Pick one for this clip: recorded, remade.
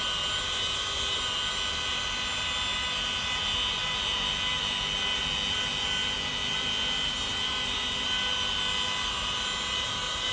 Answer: recorded